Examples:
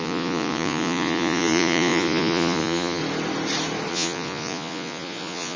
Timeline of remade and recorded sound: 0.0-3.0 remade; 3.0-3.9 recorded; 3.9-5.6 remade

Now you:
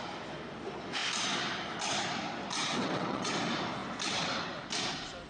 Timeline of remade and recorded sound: 0.0-2.7 recorded; 2.7-3.3 remade; 3.3-5.3 recorded

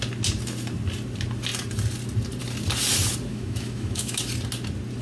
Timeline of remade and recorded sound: 0.0-3.3 recorded; 3.3-4.2 remade; 4.2-5.0 recorded